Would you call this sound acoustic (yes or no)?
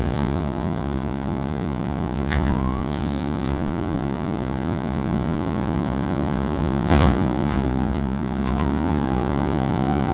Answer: no